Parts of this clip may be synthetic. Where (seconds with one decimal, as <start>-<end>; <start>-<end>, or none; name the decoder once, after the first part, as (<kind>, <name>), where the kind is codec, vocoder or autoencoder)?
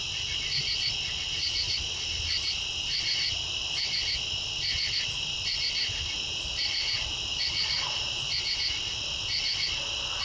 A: 7.3-8.3 (vocoder, BigVGAN v2)